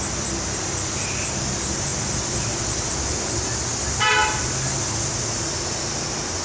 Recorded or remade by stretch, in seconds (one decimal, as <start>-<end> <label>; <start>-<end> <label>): 0.0-6.4 recorded